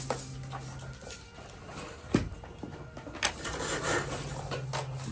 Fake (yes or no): no